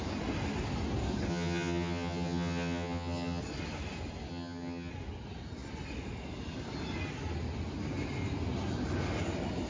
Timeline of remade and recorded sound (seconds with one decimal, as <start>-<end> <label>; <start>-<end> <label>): 0.0-1.3 recorded; 1.3-3.4 remade; 3.4-4.3 recorded; 4.3-4.9 remade; 4.9-9.7 recorded